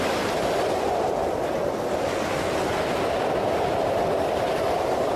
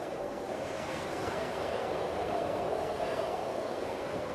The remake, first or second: second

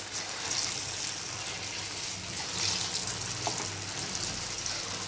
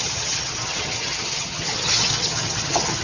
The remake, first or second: second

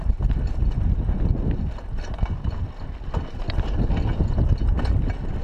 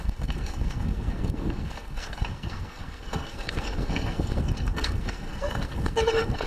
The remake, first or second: second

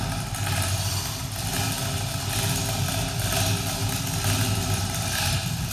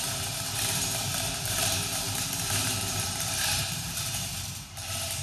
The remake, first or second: second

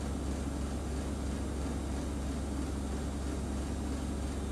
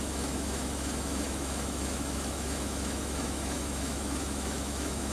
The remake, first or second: second